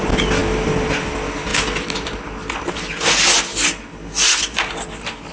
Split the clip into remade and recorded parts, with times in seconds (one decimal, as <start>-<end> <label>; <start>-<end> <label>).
0.0-5.3 recorded